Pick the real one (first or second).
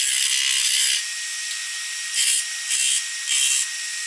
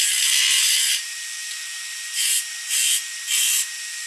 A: first